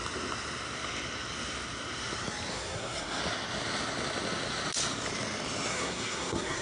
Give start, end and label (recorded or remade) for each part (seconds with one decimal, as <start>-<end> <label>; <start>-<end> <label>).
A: 0.0-2.5 recorded; 2.5-3.2 remade; 3.2-5.7 recorded; 5.7-6.6 remade